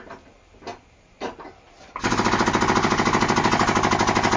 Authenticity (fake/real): real